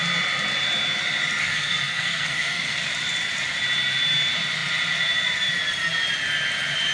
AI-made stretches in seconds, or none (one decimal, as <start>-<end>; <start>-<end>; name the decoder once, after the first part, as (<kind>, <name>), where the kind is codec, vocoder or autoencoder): 1.4-2.9 (codec, SNAC)